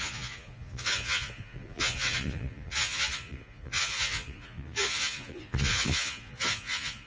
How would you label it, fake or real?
fake